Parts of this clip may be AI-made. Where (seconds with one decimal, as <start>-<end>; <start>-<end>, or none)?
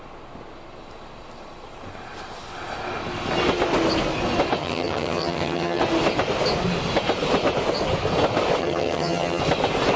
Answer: 4.6-5.8; 8.6-9.4